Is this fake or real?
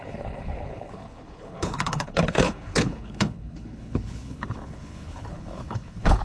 fake